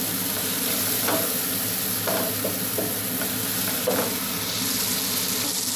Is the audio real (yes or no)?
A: yes